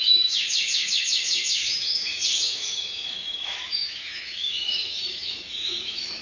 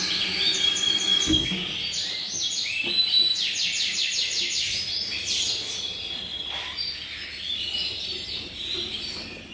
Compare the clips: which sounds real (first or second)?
second